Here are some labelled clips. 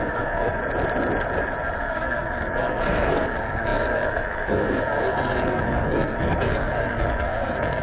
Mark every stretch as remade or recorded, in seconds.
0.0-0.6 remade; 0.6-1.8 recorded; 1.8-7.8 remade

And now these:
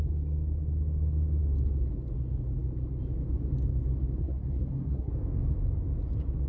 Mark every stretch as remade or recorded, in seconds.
0.0-4.2 recorded; 4.2-5.1 remade; 5.1-6.5 recorded

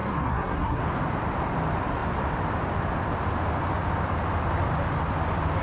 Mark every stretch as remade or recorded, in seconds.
0.0-0.8 remade; 0.8-5.6 recorded

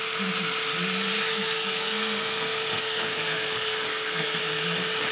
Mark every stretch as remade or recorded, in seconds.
0.0-1.3 recorded; 1.3-4.4 remade; 4.4-5.1 recorded